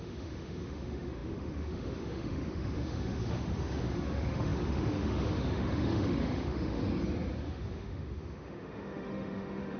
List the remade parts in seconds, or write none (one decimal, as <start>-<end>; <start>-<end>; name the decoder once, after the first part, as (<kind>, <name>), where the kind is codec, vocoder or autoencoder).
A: 0.0-6.8 (autoencoder, DAC-VAE); 7.5-9.8